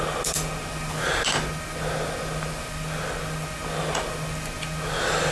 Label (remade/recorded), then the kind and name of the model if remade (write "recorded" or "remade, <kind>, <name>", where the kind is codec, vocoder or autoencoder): recorded